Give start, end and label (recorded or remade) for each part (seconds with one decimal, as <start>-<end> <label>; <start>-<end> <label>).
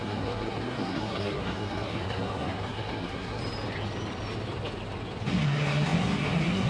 0.0-3.4 remade; 3.4-5.3 recorded; 5.3-6.7 remade